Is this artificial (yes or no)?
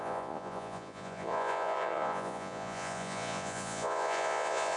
yes